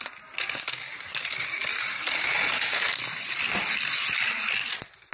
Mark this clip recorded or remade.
recorded